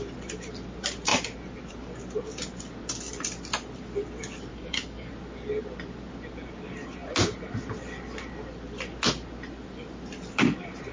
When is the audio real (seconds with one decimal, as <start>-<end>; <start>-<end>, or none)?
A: 0.0-4.5; 5.1-10.9